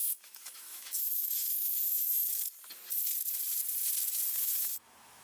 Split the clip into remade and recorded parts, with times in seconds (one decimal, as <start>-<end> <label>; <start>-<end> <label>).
0.0-2.2 remade; 2.2-4.4 recorded; 4.4-5.2 remade